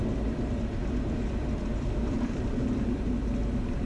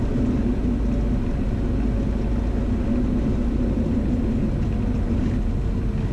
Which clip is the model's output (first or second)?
first